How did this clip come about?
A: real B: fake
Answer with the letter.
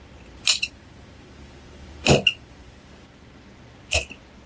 A